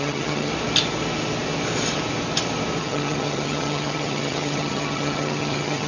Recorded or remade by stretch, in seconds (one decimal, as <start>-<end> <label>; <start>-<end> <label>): 0.0-0.5 remade; 0.5-2.8 recorded; 2.8-5.9 remade